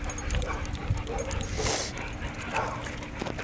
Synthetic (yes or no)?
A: no